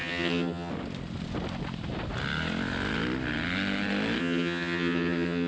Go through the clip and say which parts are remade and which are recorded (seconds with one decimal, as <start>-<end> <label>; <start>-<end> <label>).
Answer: 0.0-0.7 remade; 0.7-4.2 recorded; 4.2-5.5 remade